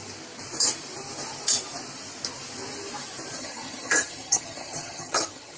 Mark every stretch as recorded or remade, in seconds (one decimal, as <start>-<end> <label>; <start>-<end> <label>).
0.0-3.4 recorded; 3.4-5.6 remade